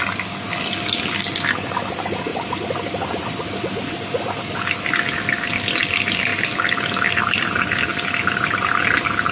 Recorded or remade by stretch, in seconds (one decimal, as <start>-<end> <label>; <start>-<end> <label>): 0.0-2.3 recorded; 2.3-3.2 remade; 3.2-6.3 recorded; 6.3-7.2 remade; 7.2-9.3 recorded